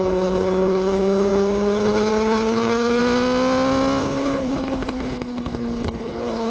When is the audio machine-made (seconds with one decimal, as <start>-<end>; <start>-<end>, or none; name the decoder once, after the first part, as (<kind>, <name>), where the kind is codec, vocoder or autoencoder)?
0.0-3.0 (codec, HILCodec); 4.0-6.5